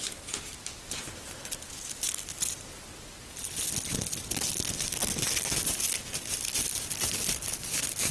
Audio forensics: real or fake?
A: real